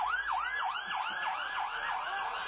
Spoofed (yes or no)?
no